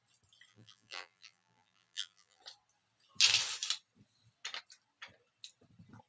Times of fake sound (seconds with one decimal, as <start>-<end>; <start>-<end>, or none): 0.5-2.4